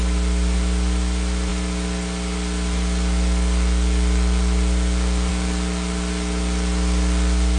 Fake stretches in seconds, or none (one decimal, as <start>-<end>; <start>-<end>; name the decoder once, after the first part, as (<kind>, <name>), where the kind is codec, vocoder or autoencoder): none